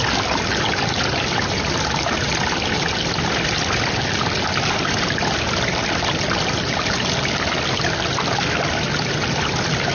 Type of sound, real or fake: real